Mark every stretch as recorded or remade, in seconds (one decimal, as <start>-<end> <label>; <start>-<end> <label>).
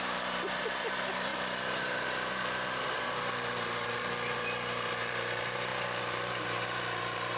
0.0-7.4 remade